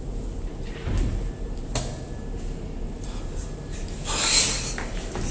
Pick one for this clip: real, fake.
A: real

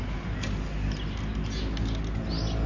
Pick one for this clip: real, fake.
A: real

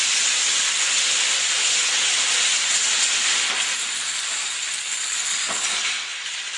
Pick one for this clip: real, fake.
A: real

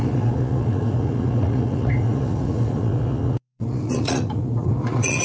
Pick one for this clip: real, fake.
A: fake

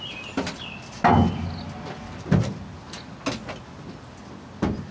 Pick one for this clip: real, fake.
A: real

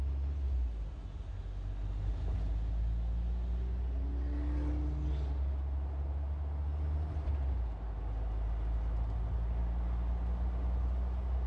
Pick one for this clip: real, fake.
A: real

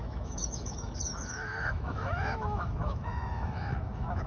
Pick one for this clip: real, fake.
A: fake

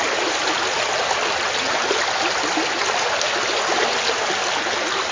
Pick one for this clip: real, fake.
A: real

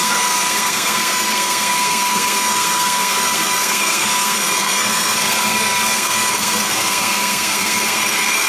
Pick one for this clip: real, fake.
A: fake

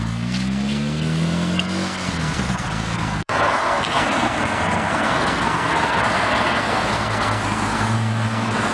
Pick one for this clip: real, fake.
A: fake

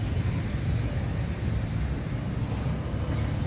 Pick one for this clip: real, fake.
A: real